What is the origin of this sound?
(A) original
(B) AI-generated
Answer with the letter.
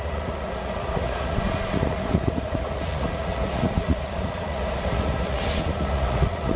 B